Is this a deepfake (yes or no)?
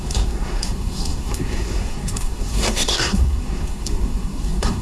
yes